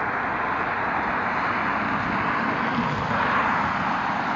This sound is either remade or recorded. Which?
recorded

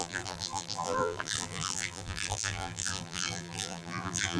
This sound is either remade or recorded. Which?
remade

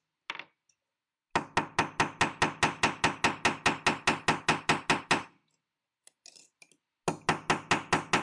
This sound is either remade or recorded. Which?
recorded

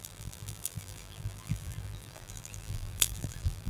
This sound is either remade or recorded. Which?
remade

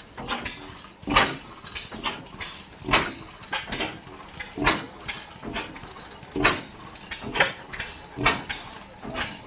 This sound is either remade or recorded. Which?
recorded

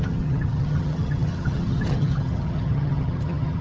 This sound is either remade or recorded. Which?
remade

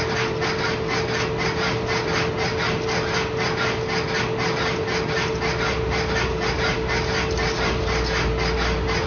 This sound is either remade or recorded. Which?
recorded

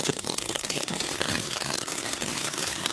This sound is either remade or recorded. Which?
remade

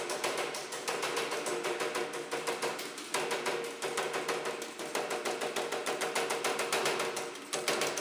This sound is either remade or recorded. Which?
recorded